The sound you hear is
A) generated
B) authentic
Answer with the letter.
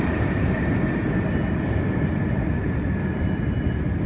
B